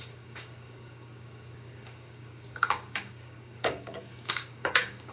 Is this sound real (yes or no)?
no